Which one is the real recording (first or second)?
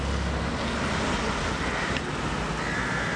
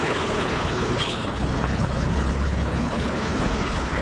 first